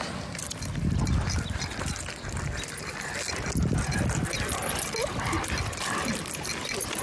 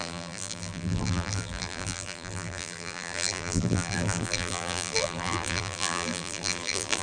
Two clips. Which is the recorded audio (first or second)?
first